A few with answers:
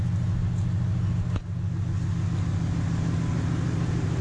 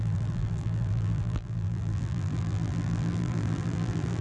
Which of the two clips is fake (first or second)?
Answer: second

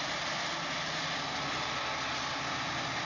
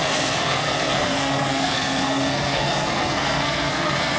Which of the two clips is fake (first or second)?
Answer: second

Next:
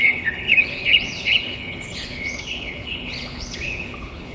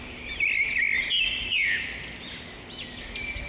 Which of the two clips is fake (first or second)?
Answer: first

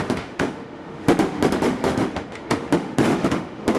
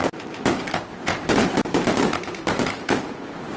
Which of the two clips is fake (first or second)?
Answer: first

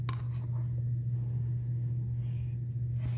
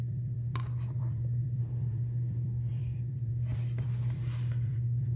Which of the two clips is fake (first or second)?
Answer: second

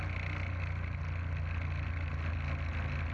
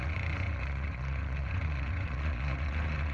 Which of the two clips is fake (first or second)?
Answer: second